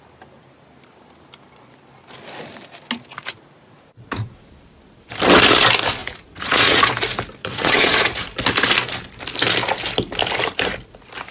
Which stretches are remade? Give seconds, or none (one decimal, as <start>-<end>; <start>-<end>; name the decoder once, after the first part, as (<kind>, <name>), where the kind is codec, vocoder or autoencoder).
3.2-4.4 (vocoder, Vocos); 6.0-6.8; 7.4-8.2